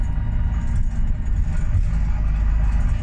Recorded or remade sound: recorded